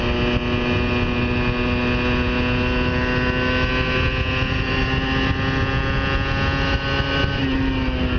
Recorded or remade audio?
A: recorded